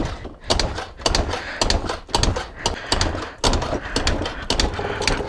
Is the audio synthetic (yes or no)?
no